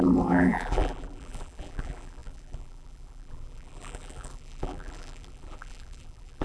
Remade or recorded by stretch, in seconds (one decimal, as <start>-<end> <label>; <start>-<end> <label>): 0.0-6.4 remade